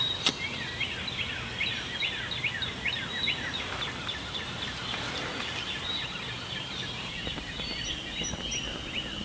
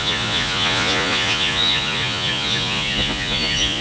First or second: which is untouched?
first